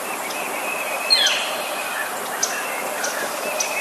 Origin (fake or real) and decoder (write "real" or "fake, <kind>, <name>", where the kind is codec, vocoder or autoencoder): real